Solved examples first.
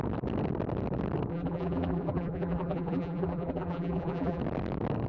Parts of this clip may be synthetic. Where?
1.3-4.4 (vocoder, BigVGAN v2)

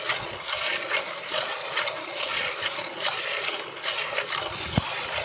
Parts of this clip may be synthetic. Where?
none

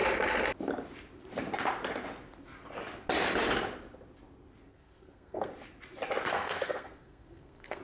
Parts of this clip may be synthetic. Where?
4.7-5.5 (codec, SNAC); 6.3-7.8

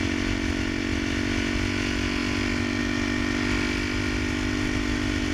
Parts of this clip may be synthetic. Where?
none